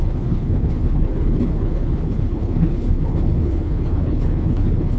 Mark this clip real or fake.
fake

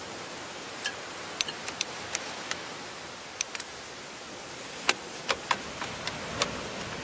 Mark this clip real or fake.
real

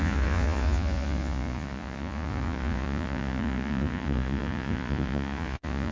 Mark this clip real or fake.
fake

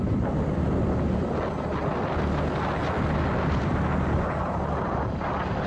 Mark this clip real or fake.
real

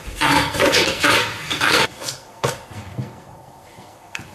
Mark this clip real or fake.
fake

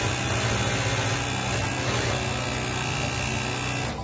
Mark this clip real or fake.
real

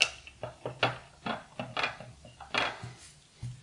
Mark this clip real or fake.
real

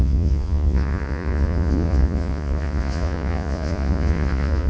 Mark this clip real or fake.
fake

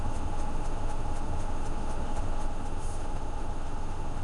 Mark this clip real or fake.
fake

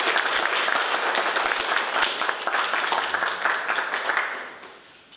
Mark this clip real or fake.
real